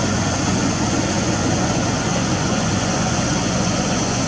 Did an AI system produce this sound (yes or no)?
yes